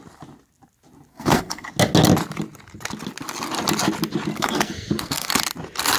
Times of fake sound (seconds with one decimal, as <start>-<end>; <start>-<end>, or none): 1.1-1.7; 4.3-5.3